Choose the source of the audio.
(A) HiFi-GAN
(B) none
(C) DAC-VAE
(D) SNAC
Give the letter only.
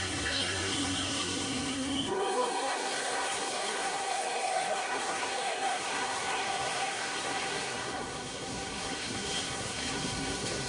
D